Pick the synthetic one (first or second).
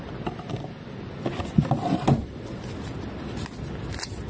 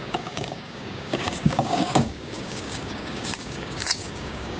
second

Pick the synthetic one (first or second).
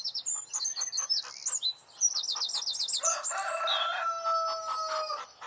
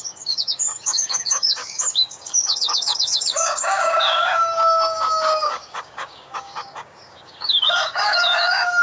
second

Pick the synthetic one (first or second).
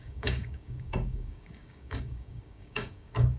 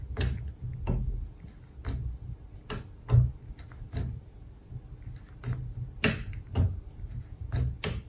first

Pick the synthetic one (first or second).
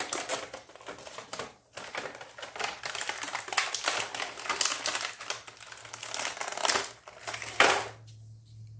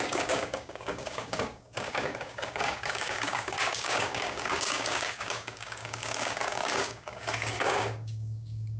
second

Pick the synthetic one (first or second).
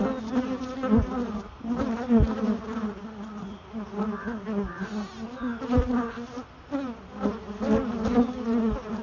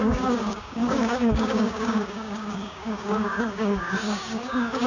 second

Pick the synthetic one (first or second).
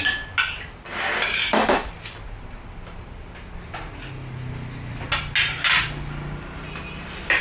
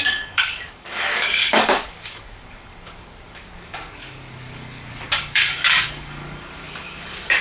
second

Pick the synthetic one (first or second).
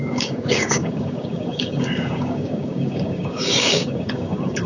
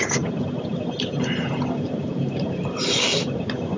first